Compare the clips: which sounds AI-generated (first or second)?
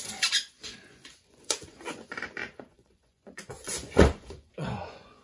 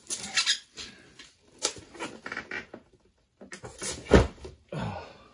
first